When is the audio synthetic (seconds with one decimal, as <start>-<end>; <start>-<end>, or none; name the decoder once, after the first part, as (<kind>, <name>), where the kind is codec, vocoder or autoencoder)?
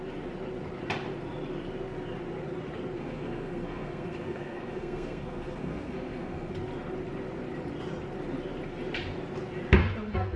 3.0-6.5 (codec, SNAC); 9.8-10.4